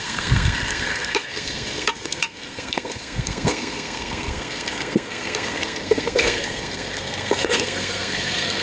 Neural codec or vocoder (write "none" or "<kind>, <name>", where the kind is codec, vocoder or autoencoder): codec, SNAC